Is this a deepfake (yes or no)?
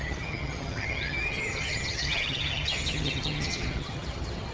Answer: yes